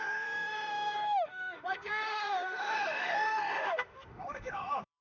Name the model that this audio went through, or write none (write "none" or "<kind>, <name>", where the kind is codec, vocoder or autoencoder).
autoencoder, DAC-VAE